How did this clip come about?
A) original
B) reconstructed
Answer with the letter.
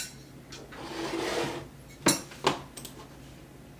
A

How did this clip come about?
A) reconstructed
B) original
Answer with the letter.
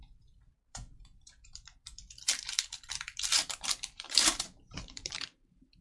A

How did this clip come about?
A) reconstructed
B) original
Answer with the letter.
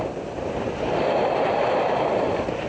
A